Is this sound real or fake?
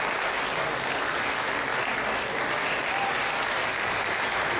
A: real